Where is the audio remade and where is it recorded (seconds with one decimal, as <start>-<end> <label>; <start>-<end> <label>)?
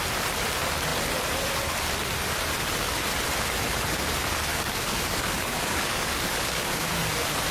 0.0-4.5 recorded; 4.5-6.9 remade; 6.9-7.5 recorded